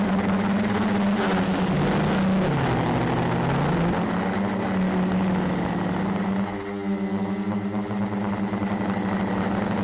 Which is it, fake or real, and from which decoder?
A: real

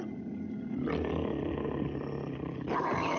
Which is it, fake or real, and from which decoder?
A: real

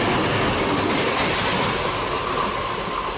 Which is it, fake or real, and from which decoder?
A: real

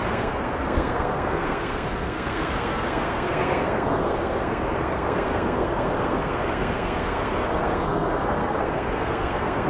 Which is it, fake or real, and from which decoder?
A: fake, codec, SNAC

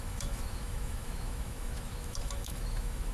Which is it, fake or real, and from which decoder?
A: fake, autoencoder, DAC-VAE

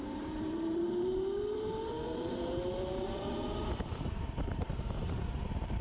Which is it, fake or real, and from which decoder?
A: fake, vocoder, BigVGAN v2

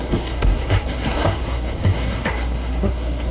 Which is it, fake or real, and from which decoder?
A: fake, codec, SNAC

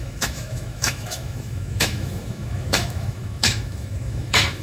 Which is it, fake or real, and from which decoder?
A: fake, autoencoder, DAC-VAE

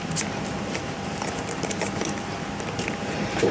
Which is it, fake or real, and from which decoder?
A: fake, vocoder, BigVGAN v2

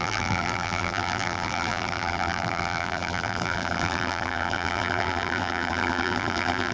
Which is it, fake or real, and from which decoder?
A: fake, vocoder, BigVGAN v2